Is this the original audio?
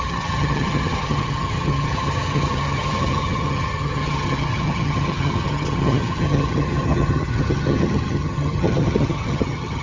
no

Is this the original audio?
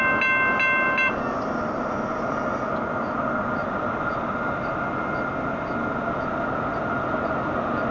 yes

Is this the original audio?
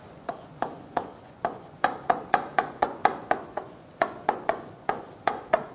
no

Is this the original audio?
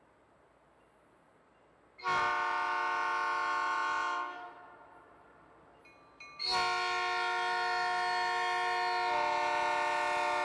yes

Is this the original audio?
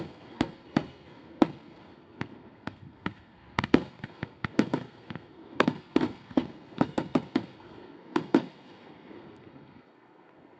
no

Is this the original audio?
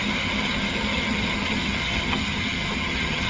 no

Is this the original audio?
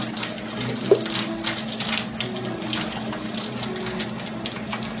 yes